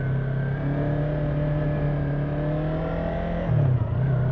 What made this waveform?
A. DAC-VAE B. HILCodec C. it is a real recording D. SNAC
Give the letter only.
C